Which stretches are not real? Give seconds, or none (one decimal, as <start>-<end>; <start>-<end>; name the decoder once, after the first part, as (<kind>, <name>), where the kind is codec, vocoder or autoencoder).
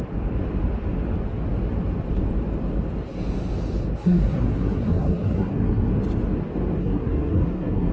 4.0-5.9 (codec, SNAC); 6.8-7.9